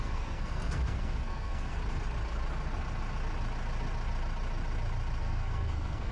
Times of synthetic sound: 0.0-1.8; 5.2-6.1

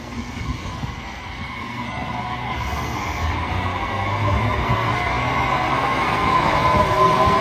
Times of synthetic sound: 0.0-7.4

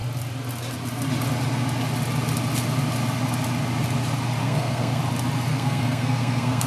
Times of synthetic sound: 4.4-5.0; 5.5-6.7

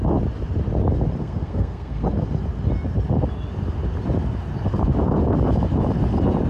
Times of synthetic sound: 1.2-2.0

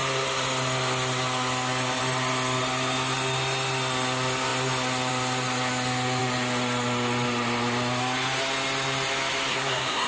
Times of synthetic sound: 9.5-10.1